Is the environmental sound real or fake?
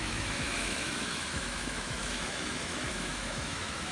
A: fake